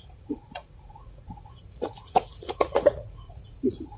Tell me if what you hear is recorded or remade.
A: remade